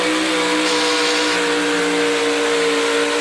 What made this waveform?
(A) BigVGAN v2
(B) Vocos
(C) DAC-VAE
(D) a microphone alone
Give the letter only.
D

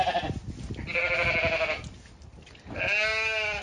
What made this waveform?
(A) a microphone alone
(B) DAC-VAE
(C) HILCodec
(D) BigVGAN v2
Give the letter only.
A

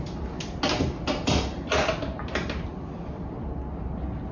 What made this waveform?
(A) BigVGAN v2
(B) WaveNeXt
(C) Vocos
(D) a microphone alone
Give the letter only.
D